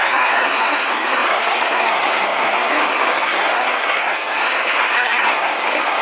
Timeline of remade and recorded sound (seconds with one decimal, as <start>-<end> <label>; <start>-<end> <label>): 0.0-6.0 remade